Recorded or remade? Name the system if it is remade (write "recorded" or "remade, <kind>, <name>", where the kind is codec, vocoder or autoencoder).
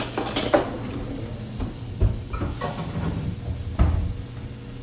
recorded